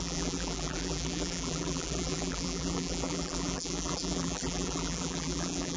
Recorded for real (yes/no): no